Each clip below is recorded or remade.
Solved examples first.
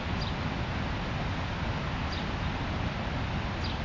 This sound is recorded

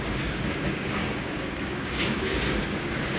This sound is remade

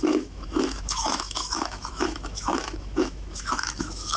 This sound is remade